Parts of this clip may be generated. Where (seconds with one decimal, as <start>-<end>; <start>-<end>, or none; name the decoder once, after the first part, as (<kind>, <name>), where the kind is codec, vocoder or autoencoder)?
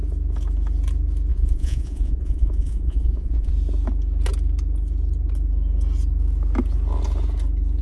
1.3-3.5 (vocoder, Vocos)